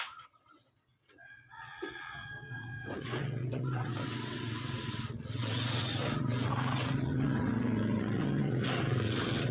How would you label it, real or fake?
fake